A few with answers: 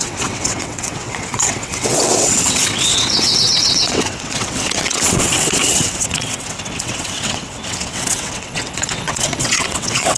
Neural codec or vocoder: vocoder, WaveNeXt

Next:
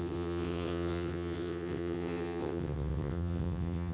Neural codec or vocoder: vocoder, WaveNeXt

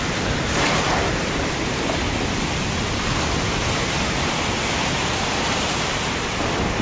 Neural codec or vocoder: none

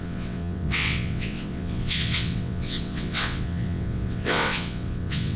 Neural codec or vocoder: vocoder, WaveNeXt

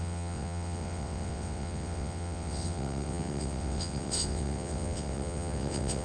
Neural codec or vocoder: vocoder, WaveNeXt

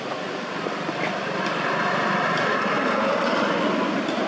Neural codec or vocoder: none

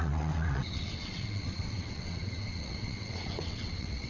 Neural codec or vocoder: vocoder, WaveNeXt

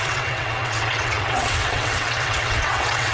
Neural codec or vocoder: vocoder, WaveNeXt